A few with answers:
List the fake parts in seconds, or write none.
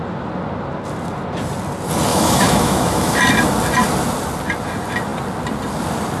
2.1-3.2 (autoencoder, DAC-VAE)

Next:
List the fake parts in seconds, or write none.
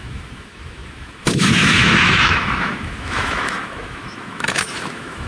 0.0-5.3 (autoencoder, DAC-VAE)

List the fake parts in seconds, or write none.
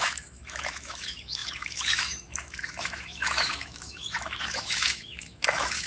0.0-5.9 (autoencoder, DAC-VAE)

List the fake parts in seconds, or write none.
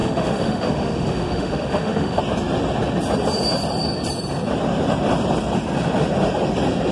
0.0-2.2 (autoencoder, DAC-VAE)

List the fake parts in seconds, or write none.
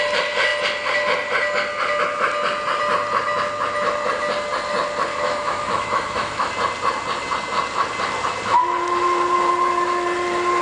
5.1-6.5 (autoencoder, DAC-VAE)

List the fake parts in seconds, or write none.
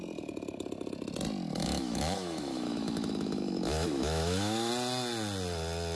1.6-4.7 (autoencoder, DAC-VAE)